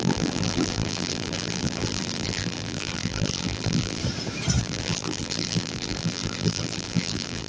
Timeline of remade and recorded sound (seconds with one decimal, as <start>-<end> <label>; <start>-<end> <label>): 0.0-4.0 remade; 4.0-4.6 recorded; 4.6-7.5 remade